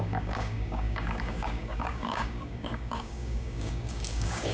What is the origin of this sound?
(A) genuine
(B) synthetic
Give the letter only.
B